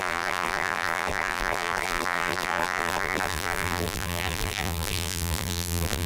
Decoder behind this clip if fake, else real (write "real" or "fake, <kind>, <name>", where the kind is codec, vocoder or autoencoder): fake, vocoder, BigVGAN v2